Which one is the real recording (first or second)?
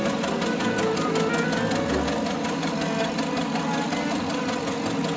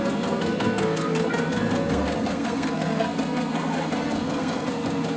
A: first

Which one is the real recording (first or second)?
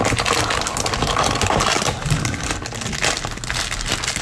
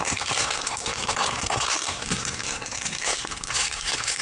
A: first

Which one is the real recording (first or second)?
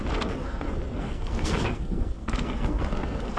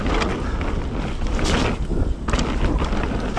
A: second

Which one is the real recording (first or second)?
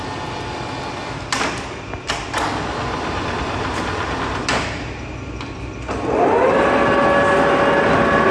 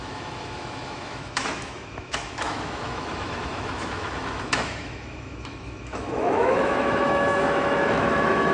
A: first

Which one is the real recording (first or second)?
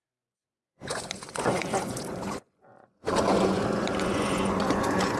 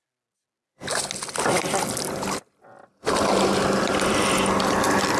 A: second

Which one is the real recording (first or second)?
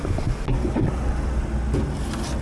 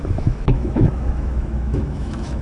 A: first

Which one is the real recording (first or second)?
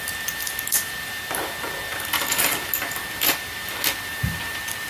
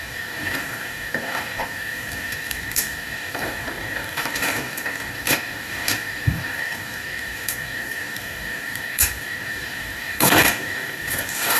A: first